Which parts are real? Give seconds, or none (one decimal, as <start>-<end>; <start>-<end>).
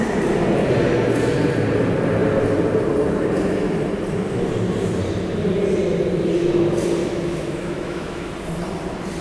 0.0-7.0; 8.3-9.2